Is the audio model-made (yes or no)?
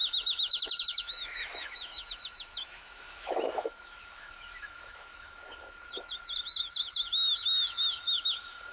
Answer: yes